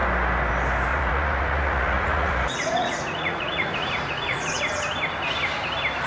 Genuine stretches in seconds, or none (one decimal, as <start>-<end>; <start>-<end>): 0.0-0.9; 4.6-6.1